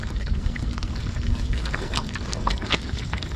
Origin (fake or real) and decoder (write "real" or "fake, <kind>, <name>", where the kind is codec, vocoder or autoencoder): fake, codec, SNAC